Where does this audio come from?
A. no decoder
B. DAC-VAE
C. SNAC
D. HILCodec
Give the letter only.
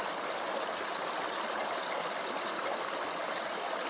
A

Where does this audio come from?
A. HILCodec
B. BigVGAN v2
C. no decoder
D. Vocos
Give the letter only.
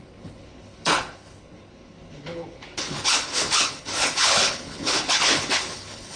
A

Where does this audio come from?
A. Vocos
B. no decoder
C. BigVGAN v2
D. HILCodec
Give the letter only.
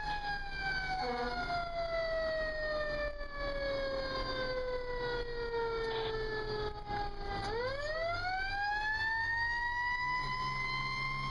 B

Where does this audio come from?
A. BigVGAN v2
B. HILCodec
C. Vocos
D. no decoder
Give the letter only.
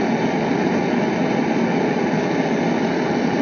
D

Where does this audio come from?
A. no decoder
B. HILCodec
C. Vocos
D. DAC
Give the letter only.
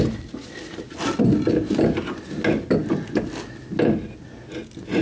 A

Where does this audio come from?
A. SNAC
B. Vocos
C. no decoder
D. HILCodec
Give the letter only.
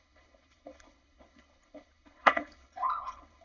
D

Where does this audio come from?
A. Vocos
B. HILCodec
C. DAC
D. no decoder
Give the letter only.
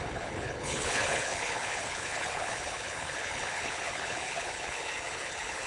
B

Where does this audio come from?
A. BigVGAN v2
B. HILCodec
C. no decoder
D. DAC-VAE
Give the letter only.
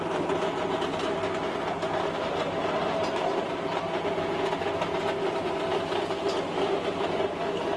C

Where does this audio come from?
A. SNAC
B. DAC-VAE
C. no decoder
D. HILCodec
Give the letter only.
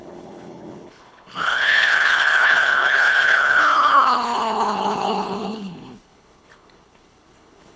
D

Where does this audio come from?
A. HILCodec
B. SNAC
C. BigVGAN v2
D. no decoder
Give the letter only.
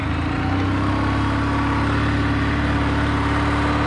D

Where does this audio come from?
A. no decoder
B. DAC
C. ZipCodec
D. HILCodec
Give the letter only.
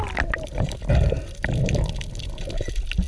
A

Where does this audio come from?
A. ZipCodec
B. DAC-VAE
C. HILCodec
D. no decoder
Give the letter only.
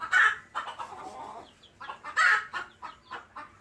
D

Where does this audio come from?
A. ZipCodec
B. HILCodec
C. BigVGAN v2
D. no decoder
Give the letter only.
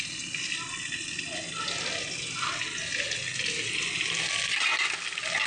D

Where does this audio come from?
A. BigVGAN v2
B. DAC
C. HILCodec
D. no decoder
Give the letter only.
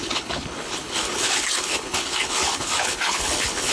C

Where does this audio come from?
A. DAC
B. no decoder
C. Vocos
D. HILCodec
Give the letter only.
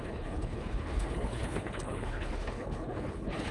D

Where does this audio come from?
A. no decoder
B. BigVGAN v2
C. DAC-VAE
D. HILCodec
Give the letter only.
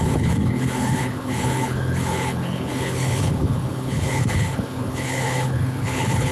D